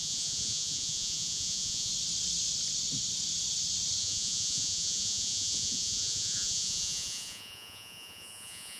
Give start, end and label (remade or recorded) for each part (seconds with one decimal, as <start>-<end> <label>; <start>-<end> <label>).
0.0-1.9 remade; 1.9-4.0 recorded; 4.0-8.8 remade

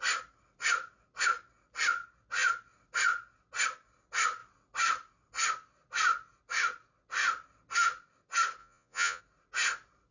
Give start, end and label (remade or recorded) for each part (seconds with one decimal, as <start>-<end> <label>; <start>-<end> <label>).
0.0-8.6 recorded; 8.6-9.2 remade; 9.2-10.1 recorded

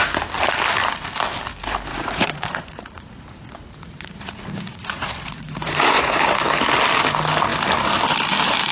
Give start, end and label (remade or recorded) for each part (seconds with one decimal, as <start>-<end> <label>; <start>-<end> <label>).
0.0-1.9 recorded; 1.9-6.2 remade; 6.2-8.7 recorded

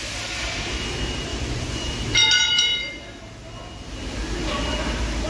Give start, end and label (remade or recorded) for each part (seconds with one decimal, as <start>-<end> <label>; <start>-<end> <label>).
0.0-1.3 recorded; 1.3-1.9 remade; 1.9-5.3 recorded

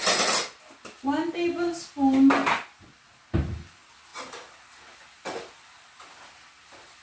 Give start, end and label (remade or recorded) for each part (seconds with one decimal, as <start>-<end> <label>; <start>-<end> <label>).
0.0-7.0 recorded

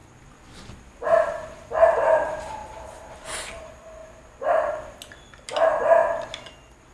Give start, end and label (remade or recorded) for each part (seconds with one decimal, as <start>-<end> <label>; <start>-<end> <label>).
0.0-6.9 recorded

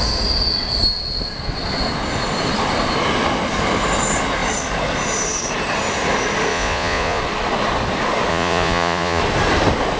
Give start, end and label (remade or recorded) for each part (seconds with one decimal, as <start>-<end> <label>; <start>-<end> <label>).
0.0-6.5 recorded; 6.5-7.2 remade; 7.2-8.3 recorded; 8.3-9.2 remade; 9.2-10.0 recorded

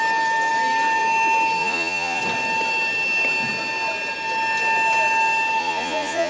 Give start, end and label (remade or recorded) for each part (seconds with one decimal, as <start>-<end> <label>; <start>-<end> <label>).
0.0-1.6 recorded; 1.6-2.2 remade; 2.2-5.6 recorded; 5.6-6.3 remade